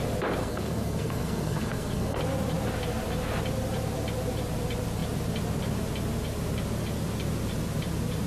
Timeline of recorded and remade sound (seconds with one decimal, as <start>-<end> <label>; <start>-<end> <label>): 0.0-0.4 recorded; 0.4-2.2 remade; 2.2-8.3 recorded